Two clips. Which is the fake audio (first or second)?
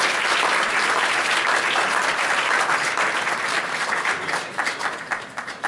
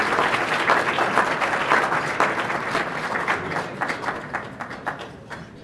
first